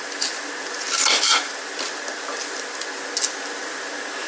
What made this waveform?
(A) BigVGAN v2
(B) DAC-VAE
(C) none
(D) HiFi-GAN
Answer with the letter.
C